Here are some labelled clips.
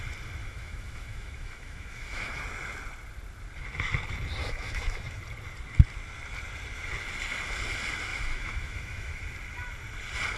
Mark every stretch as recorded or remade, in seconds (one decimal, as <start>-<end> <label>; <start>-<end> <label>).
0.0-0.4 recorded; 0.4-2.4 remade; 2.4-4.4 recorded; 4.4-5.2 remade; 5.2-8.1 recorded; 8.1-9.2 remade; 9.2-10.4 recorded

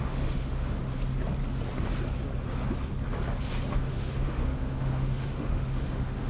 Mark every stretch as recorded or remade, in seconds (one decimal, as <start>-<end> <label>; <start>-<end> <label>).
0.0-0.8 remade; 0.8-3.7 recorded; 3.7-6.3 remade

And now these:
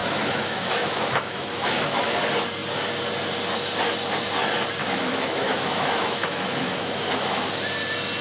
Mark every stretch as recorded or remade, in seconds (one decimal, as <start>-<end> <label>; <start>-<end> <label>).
0.0-2.2 remade; 2.2-4.8 recorded; 4.8-7.5 remade; 7.5-8.2 recorded